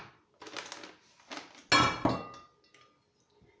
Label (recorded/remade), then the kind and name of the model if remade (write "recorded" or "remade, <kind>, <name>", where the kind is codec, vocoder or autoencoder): recorded